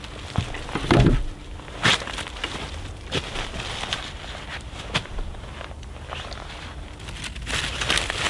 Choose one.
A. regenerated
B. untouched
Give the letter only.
B